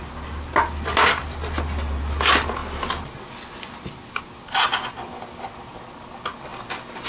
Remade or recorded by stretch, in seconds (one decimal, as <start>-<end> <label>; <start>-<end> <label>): 0.0-7.1 recorded